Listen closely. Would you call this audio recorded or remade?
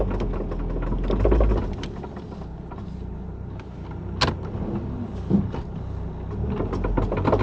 recorded